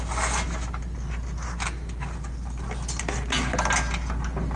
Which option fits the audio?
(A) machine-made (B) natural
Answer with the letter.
B